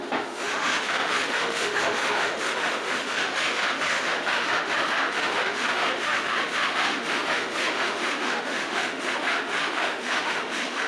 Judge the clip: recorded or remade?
remade